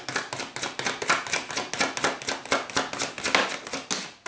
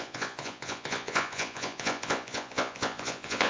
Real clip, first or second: first